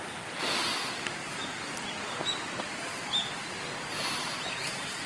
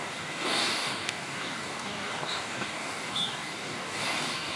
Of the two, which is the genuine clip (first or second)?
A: first